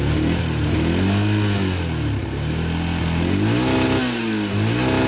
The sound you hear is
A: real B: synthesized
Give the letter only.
A